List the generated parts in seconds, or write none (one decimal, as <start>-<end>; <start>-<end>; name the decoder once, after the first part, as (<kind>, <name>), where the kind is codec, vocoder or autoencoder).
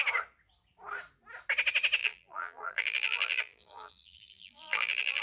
2.0-5.2 (vocoder, BigVGAN v2)